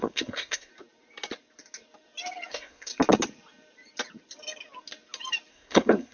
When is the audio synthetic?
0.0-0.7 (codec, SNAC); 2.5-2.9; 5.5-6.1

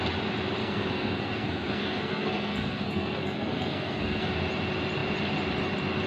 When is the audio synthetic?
0.6-4.3 (codec, SNAC)

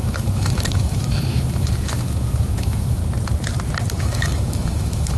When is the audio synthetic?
0.0-3.0 (autoencoder, DAC-VAE); 4.0-5.2

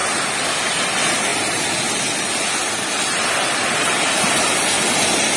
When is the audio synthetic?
none

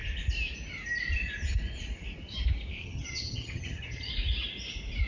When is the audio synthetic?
2.8-4.1 (vocoder, HiFi-GAN)

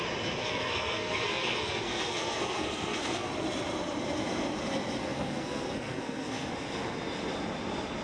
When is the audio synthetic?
0.4-3.3 (codec, SNAC); 5.0-6.5